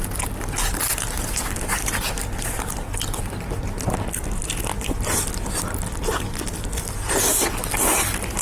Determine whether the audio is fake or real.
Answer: real